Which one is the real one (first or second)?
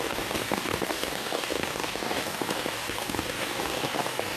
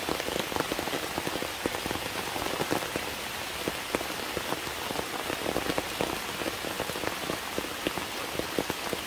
second